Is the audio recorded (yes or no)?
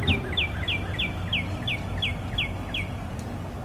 yes